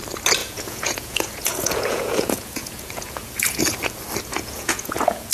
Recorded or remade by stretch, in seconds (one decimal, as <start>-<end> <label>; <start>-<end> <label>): 0.0-0.4 recorded; 0.4-3.6 remade; 3.6-4.3 recorded; 4.3-5.3 remade